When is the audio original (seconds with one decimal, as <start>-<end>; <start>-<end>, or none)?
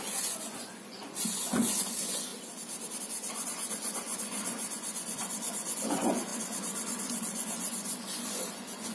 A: 2.3-3.0